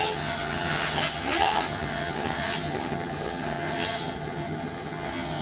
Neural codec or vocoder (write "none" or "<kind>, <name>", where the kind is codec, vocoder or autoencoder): vocoder, HiFi-GAN